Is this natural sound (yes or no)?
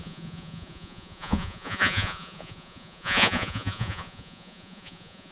no